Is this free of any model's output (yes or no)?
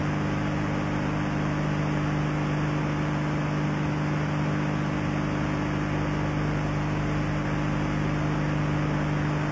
yes